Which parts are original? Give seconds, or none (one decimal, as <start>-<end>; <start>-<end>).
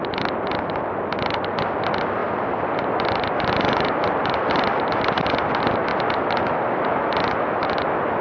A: 0.0-8.2